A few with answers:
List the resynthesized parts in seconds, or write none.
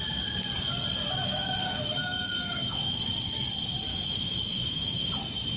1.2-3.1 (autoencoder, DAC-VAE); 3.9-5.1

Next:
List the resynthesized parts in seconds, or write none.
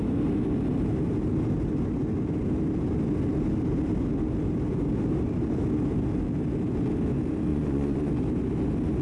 7.5-8.1 (vocoder, Vocos)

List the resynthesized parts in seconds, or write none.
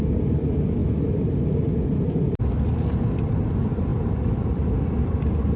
0.0-0.8 (vocoder, BigVGAN v2); 2.4-5.6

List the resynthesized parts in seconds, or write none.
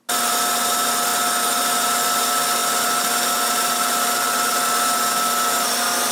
none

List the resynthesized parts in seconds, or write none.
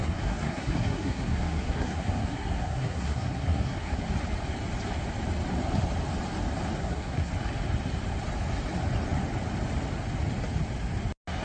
0.0-4.0 (codec, SNAC); 6.8-7.3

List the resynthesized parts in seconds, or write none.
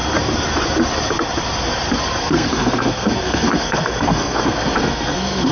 2.2-5.5 (codec, SNAC)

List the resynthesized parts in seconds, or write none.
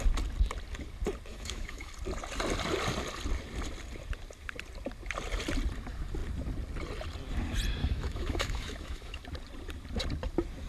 1.3-1.9 (autoencoder, DAC-VAE); 7.8-9.2